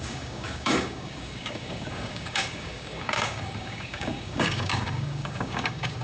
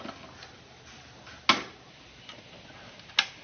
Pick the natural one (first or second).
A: second